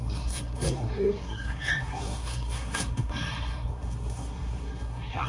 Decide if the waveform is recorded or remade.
remade